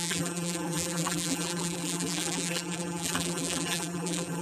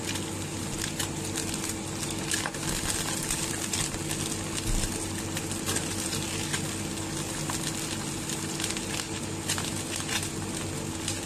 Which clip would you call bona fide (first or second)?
second